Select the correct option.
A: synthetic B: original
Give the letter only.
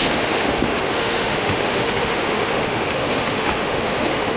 A